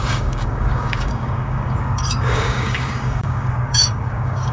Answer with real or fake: fake